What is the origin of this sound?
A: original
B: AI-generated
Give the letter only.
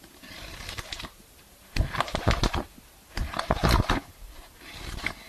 B